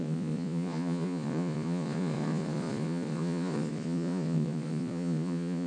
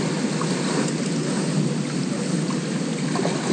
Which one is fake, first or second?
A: first